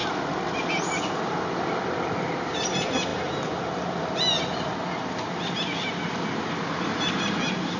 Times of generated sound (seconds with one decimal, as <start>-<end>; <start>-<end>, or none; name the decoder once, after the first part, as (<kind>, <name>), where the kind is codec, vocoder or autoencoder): none